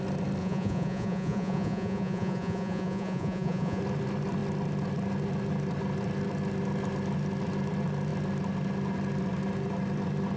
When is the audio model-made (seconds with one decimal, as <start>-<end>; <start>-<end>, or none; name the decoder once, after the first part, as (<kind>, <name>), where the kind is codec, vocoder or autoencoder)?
0.4-3.8 (vocoder, Vocos)